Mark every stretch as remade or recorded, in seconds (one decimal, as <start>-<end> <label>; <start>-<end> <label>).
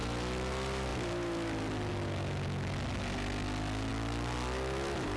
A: 0.0-5.2 recorded